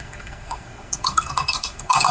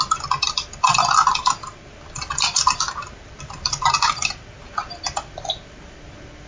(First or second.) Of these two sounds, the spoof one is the first